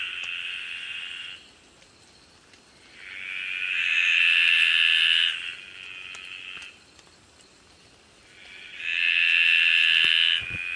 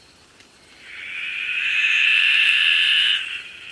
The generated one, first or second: second